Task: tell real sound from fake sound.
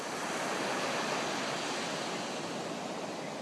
real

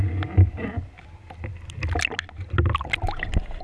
real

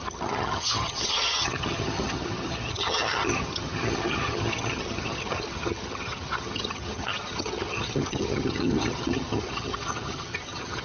fake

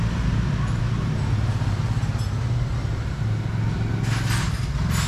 real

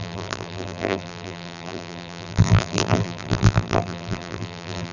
fake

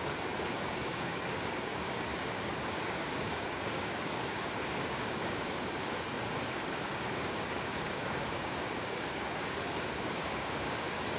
fake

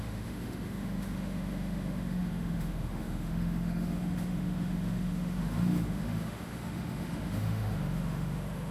fake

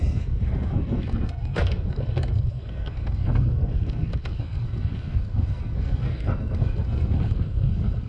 fake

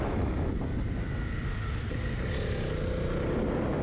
real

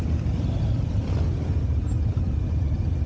real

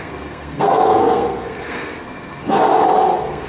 fake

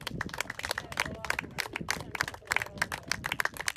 real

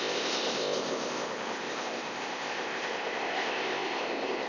fake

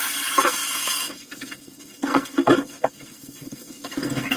fake